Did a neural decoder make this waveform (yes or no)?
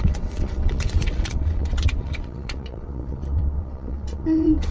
yes